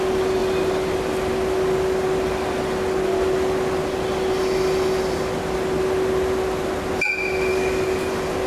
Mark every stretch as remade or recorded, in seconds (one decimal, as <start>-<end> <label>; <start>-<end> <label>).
0.0-7.5 recorded; 7.5-8.1 remade; 8.1-8.5 recorded